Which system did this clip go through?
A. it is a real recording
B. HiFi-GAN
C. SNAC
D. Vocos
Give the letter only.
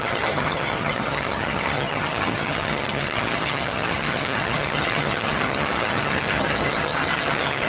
B